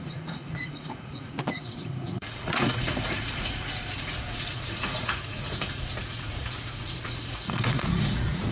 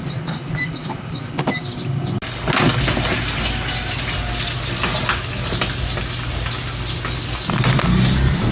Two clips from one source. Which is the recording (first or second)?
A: second